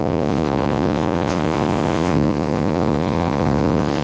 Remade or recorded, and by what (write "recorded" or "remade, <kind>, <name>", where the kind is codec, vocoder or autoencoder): remade, vocoder, Vocos